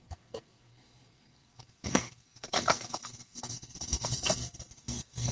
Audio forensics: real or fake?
fake